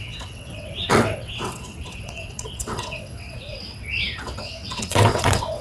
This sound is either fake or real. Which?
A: fake